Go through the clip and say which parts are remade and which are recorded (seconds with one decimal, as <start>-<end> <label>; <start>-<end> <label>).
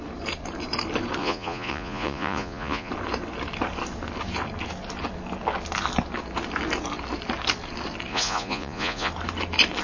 0.0-1.2 recorded; 1.2-2.9 remade; 2.9-8.1 recorded; 8.1-9.1 remade; 9.1-9.8 recorded